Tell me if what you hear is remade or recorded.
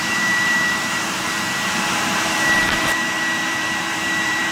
remade